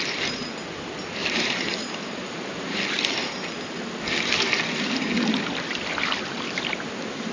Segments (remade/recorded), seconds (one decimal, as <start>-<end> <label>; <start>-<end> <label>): 0.0-1.2 recorded; 1.2-2.8 remade; 2.8-7.3 recorded